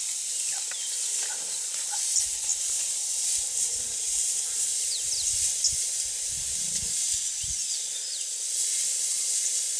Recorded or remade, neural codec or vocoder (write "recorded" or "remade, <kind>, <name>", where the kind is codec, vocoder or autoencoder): recorded